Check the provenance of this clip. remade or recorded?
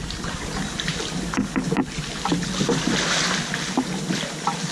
recorded